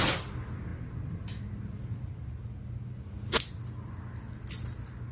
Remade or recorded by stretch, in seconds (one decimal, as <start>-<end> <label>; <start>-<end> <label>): 0.0-5.1 recorded